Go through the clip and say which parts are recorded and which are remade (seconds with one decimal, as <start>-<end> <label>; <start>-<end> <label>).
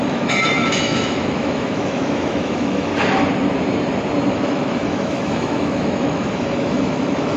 0.0-2.9 remade; 2.9-4.3 recorded; 4.3-7.4 remade